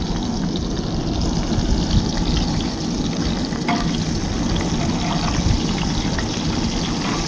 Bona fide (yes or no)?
yes